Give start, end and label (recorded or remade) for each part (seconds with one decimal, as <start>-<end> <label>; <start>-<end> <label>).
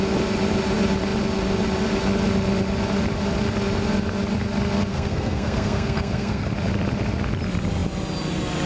0.0-4.9 recorded; 4.9-6.5 remade; 6.5-8.7 recorded